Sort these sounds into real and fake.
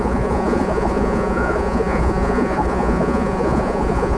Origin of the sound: fake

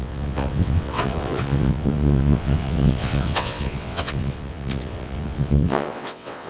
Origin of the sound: fake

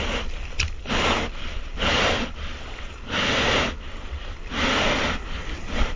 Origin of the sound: real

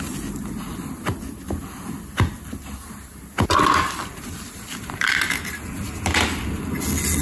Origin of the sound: real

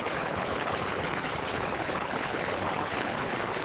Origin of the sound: fake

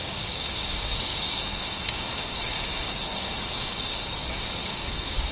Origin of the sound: fake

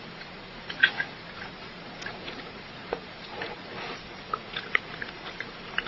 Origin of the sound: fake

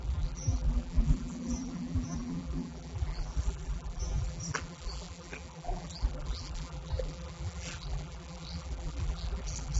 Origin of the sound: fake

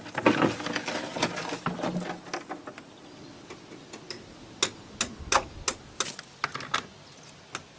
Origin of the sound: real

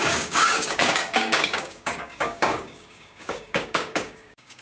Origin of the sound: fake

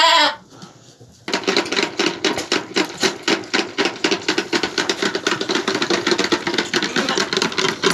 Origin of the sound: real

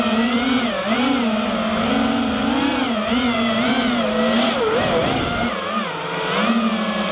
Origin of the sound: real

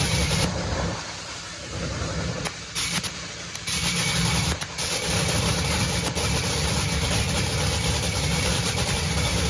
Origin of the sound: fake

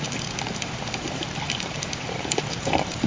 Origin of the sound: fake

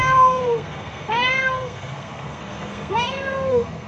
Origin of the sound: fake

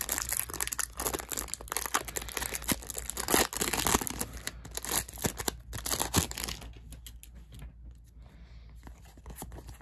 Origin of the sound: real